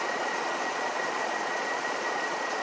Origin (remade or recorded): remade